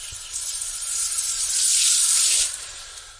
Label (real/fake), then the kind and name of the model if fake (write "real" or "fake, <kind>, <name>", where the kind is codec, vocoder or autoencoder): fake, vocoder, BigVGAN v2